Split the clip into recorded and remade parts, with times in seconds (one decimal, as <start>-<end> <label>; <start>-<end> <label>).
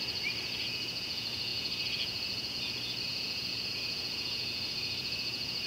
0.0-5.7 remade